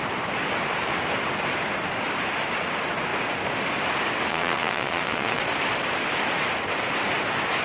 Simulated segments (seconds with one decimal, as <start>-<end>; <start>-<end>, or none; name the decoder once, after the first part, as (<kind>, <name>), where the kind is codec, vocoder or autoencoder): 4.3-5.4 (vocoder, Vocos)